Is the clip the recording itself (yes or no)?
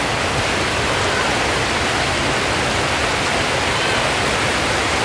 yes